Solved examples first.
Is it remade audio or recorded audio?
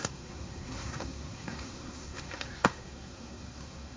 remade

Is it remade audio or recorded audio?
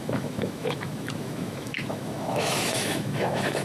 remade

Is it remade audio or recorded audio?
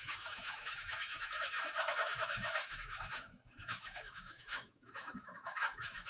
remade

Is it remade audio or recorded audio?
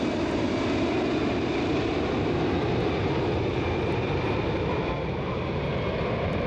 recorded